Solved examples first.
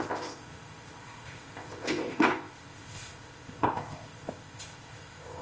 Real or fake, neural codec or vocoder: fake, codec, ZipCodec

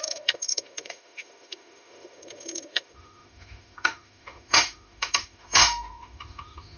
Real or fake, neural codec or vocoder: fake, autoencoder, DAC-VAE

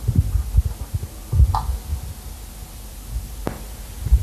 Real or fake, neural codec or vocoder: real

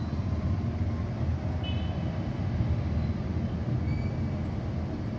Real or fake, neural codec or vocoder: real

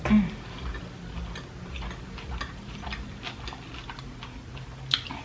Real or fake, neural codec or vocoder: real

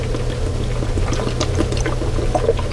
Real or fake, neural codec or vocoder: real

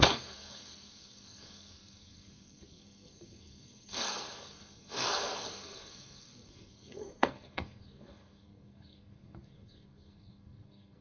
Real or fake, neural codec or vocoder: fake, codec, SNAC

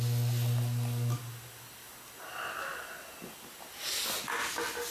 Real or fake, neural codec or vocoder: real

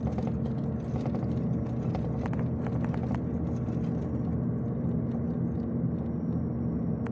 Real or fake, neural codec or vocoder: real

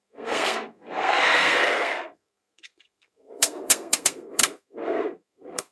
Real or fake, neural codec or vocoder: fake, codec, SNAC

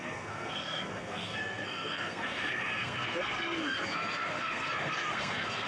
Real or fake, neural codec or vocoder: fake, codec, SNAC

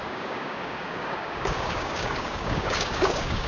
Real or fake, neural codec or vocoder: fake, codec, DAC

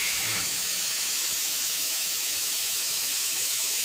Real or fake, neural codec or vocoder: fake, autoencoder, DAC-VAE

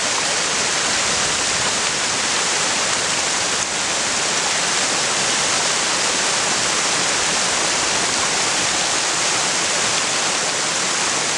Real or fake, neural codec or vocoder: real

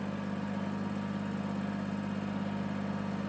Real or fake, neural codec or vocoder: real